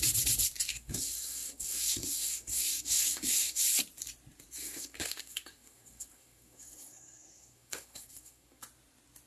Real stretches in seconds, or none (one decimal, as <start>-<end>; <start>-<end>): 0.0-0.7; 3.6-4.6; 8.6-9.3